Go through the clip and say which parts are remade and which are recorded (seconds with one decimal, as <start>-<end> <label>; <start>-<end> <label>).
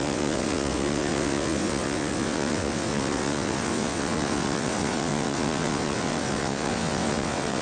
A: 0.0-7.6 remade